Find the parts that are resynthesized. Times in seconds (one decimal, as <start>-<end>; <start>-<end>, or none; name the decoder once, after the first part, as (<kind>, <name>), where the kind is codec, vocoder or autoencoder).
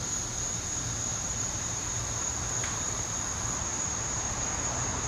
1.1-1.9 (vocoder, BigVGAN v2); 2.6-3.2; 3.7-5.1